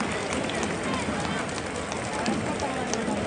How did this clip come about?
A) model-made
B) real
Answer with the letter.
B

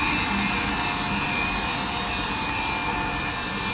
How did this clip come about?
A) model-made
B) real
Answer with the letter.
B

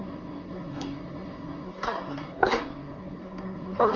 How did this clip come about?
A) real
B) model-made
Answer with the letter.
B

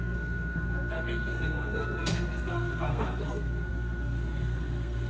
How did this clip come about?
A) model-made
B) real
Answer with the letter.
A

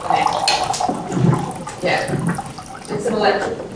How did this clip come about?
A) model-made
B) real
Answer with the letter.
B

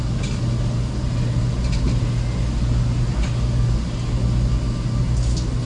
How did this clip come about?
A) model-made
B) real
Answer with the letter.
B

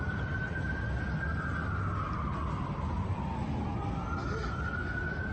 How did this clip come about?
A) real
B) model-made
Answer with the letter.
A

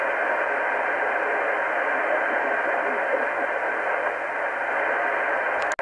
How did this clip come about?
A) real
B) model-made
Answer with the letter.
A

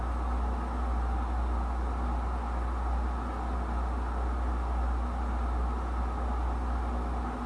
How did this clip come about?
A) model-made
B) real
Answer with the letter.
B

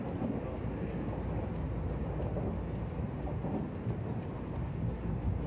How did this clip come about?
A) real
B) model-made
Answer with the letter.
A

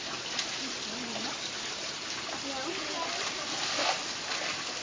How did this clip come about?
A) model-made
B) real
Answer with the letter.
B